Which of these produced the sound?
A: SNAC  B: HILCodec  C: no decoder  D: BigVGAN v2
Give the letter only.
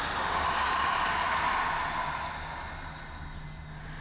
C